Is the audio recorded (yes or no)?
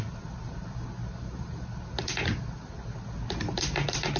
yes